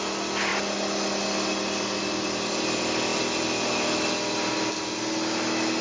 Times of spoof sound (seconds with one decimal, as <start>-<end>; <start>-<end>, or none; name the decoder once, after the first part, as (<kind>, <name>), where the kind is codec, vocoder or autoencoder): none